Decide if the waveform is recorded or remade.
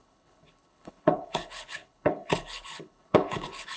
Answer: remade